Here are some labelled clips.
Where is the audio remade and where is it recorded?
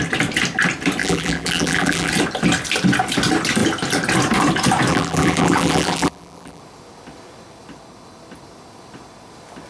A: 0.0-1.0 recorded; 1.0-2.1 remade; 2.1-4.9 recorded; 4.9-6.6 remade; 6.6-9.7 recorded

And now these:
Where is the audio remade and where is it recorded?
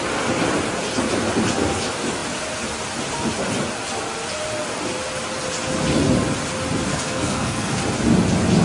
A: 0.0-6.9 recorded; 6.9-7.8 remade; 7.8-8.6 recorded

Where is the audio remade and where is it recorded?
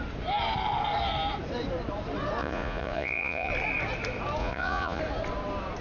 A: 0.0-2.4 recorded; 2.4-3.5 remade; 3.5-4.4 recorded; 4.4-5.0 remade; 5.0-5.8 recorded